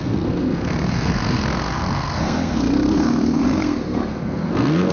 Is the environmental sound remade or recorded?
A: remade